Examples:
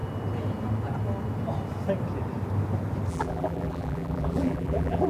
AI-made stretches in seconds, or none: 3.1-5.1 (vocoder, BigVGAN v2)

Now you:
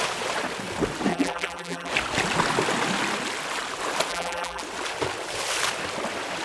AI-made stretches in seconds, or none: 1.1-1.9 (vocoder, BigVGAN v2); 4.1-4.6

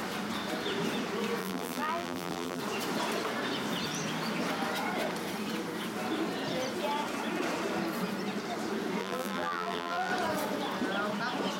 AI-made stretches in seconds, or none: 1.4-2.6 (vocoder, BigVGAN v2); 9.0-10.1

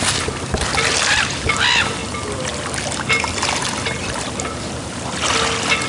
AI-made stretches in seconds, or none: 4.0-5.1 (vocoder, BigVGAN v2)

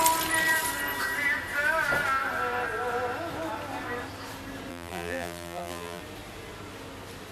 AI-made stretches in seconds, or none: 4.7-6.0 (vocoder, BigVGAN v2)

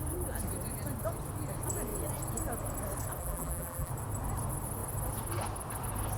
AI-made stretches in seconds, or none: 3.2-3.9 (vocoder, BigVGAN v2)